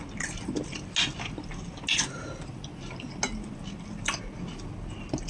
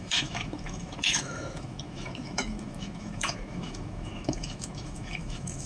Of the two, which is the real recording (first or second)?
first